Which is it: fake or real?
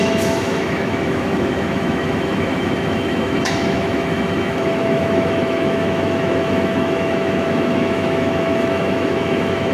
fake